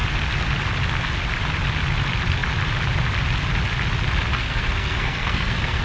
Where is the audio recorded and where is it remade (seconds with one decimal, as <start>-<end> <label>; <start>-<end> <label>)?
0.0-4.3 recorded; 4.3-5.8 remade